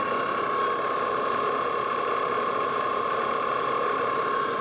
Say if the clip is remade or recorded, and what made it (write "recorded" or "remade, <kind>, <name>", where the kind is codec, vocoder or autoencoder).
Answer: recorded